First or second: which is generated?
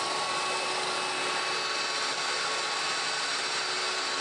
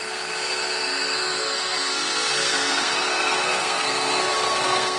second